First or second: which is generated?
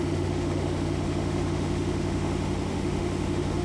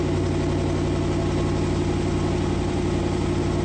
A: first